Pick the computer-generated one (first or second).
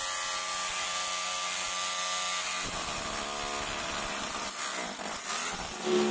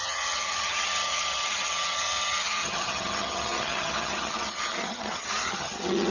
second